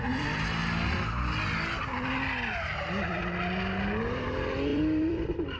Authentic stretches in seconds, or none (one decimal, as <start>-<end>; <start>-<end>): 0.6-4.0